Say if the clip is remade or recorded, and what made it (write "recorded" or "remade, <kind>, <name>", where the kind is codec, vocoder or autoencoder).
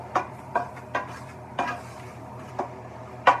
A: remade, vocoder, BigVGAN v2